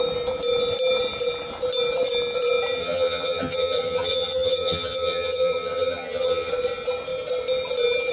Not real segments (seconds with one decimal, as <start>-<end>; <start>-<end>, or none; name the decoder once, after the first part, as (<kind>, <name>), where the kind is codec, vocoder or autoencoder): 2.8-6.5 (vocoder, HiFi-GAN)